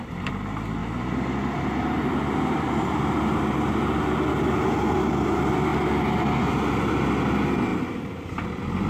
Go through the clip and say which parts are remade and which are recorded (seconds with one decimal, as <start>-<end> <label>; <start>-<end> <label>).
0.0-8.9 recorded